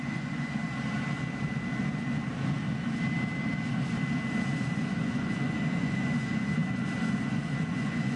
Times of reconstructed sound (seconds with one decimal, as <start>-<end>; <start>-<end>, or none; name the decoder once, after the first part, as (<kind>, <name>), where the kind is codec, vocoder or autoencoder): 0.0-0.6 (vocoder, Vocos); 4.7-6.6; 7.3-8.2

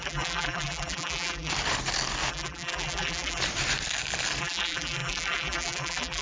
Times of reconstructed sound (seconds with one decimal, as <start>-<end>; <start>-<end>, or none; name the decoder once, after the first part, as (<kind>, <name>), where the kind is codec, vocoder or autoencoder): 0.0-1.5 (vocoder, BigVGAN v2); 2.3-3.4; 4.4-6.2